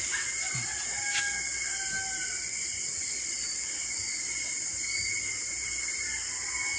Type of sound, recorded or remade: recorded